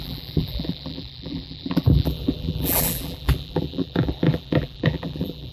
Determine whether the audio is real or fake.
fake